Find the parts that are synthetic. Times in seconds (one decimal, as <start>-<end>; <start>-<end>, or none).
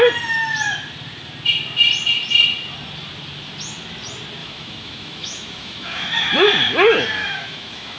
4.4-6.3; 7.2-8.0